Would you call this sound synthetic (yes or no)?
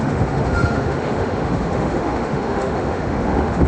yes